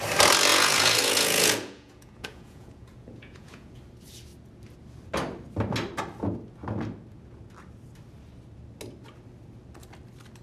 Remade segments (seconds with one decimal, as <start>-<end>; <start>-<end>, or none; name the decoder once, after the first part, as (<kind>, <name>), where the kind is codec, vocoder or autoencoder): 0.5-3.8 (vocoder, Vocos)